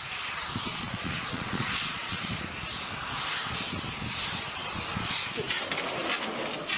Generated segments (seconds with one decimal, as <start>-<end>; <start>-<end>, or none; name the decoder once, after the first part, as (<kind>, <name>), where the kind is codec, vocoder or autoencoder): 0.7-2.3 (vocoder, Vocos)